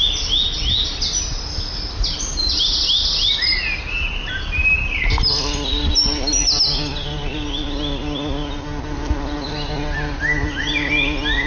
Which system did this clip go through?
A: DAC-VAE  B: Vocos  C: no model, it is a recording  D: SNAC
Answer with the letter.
C